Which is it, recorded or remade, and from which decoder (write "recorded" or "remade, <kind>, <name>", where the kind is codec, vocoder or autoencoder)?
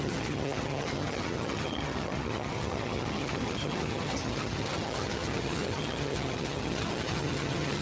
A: remade, vocoder, HiFi-GAN